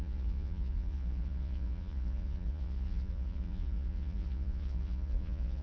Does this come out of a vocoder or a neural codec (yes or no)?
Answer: yes